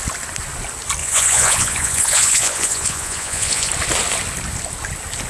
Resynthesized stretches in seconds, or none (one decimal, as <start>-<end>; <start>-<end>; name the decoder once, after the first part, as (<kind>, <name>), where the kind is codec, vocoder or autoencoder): 1.0-3.7 (vocoder, Vocos)